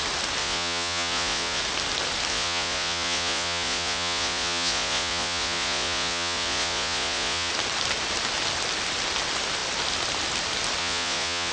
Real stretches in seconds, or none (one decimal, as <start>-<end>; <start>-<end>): 0.0-0.4; 1.6-2.3; 7.5-10.8